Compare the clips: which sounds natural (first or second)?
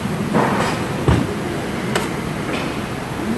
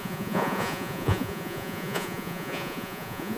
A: first